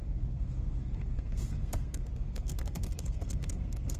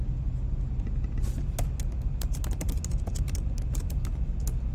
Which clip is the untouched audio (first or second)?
second